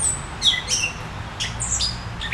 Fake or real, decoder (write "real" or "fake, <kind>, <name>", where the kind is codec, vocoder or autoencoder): real